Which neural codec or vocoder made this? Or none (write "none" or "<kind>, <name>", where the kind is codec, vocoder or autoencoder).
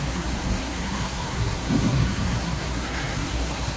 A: codec, SNAC